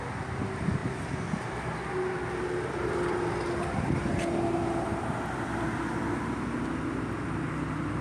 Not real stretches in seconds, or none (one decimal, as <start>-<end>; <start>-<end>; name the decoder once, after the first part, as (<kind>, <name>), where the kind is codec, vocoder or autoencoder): none